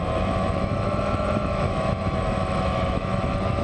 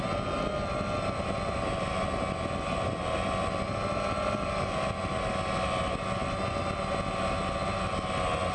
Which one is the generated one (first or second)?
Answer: first